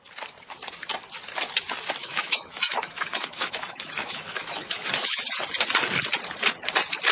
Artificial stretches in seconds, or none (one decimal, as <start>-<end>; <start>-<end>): 2.0-5.2